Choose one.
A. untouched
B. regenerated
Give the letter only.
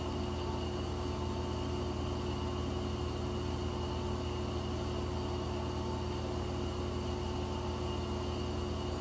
A